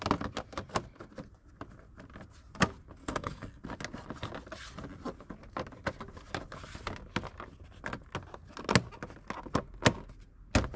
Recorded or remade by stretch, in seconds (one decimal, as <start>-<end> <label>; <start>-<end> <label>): 0.0-3.0 recorded; 3.0-3.6 remade; 3.6-10.8 recorded

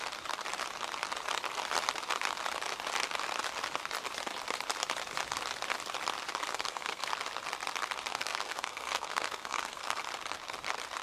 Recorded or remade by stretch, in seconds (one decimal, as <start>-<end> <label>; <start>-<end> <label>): 0.0-6.5 recorded; 6.5-7.1 remade; 7.1-8.1 recorded; 8.1-10.0 remade; 10.0-11.0 recorded

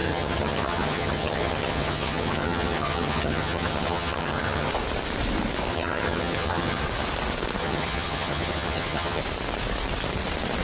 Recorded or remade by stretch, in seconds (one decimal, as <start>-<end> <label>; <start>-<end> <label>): 0.0-4.7 remade; 4.7-5.7 recorded; 5.7-6.8 remade; 6.8-7.6 recorded; 7.6-9.2 remade; 9.2-10.6 recorded

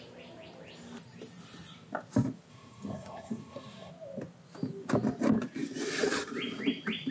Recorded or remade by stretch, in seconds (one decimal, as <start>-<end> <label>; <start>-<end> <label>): 0.0-2.5 recorded; 2.5-3.9 remade; 3.9-7.1 recorded

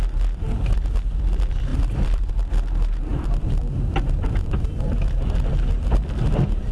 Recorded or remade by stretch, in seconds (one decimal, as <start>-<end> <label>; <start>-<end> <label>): 0.0-1.7 recorded; 1.7-2.3 remade; 2.3-3.1 recorded; 3.1-5.7 remade; 5.7-6.7 recorded

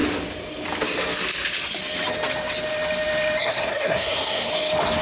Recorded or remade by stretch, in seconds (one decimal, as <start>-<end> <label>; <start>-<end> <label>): 0.0-3.4 recorded; 3.4-4.5 remade; 4.5-5.0 recorded

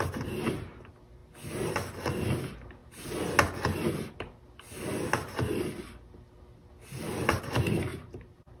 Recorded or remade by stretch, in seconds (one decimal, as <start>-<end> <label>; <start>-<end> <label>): 0.0-7.9 recorded; 7.9-8.6 remade